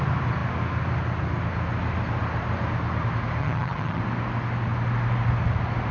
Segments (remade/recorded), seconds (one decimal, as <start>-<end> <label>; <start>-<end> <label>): 0.0-3.4 recorded; 3.4-4.0 remade; 4.0-5.9 recorded